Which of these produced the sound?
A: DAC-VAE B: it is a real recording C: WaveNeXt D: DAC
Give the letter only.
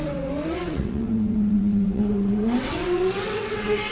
C